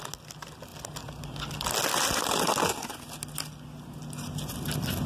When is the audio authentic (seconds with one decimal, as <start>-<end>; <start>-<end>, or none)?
0.0-5.1